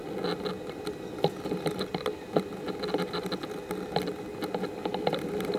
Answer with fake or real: real